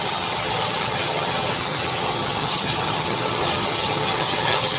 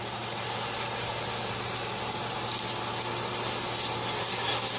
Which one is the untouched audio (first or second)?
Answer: second